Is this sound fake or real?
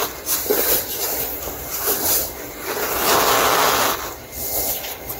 real